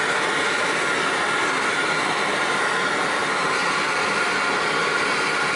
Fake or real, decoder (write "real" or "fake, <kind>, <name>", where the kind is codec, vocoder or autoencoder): real